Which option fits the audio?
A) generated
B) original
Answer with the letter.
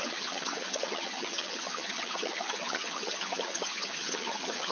A